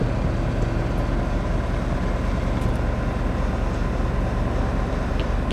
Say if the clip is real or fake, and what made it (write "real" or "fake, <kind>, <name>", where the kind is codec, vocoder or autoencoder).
real